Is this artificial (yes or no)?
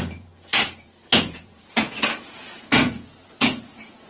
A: yes